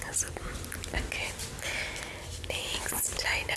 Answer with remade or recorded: recorded